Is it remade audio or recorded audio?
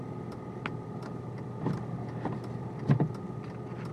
recorded